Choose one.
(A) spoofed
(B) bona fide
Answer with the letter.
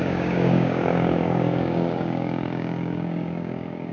A